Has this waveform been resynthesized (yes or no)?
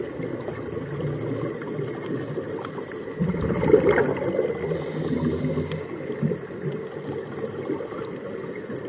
no